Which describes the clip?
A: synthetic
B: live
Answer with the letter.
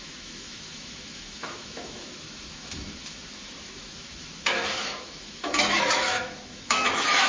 A